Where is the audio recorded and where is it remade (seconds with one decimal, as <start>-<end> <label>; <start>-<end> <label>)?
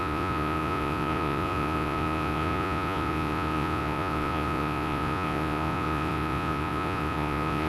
0.0-7.7 remade